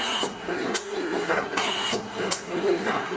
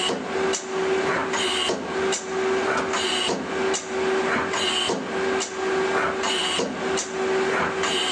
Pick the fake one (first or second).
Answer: first